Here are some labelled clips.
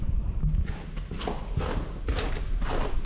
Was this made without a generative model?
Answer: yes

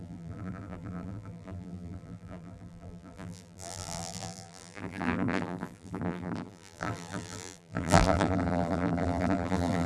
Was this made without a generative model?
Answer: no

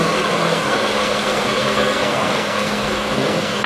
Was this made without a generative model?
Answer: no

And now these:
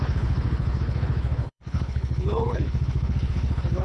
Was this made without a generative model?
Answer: no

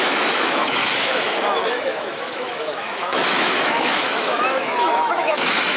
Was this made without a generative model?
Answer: no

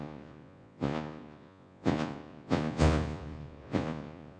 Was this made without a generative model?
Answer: no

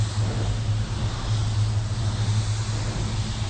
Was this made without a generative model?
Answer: yes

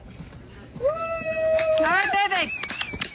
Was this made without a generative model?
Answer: yes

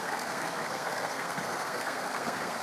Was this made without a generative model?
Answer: no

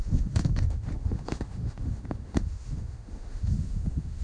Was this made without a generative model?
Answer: no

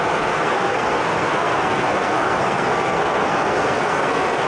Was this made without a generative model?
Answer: no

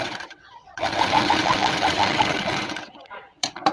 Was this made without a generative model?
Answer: no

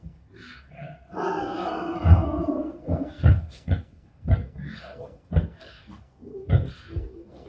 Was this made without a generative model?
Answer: no